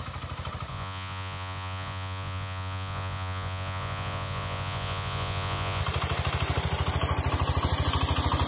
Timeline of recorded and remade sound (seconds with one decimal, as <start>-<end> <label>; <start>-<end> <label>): 0.0-0.7 recorded; 0.7-5.8 remade; 5.8-8.5 recorded